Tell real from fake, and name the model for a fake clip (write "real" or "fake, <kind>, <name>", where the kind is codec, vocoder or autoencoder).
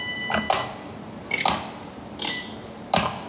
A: real